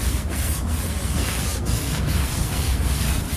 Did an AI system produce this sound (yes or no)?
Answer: yes